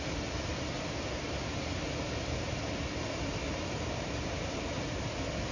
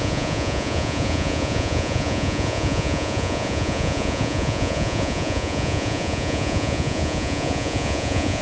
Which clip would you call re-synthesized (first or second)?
second